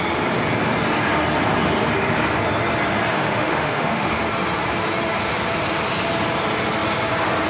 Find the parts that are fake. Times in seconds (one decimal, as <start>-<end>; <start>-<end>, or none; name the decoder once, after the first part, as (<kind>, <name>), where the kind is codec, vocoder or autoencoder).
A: 3.1-4.2 (autoencoder, DAC-VAE)